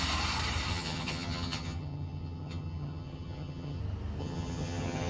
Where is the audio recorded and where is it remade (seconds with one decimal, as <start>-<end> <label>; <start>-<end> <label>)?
0.0-0.7 recorded; 0.7-3.8 remade; 3.8-4.2 recorded; 4.2-5.1 remade